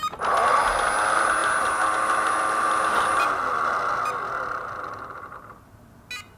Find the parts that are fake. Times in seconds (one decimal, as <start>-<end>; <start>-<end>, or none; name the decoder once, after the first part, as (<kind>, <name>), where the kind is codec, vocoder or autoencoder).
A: none